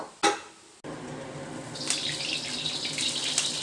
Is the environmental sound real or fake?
real